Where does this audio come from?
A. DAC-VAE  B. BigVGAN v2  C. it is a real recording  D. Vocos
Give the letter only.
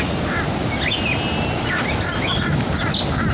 C